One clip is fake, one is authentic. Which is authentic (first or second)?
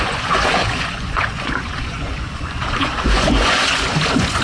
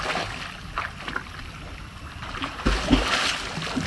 second